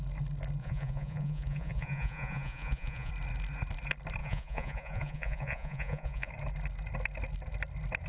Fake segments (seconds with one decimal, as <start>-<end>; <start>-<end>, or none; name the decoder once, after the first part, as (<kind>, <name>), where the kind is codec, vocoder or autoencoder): 0.6-3.1 (vocoder, Vocos); 4.2-6.3